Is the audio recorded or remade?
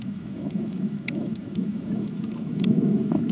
remade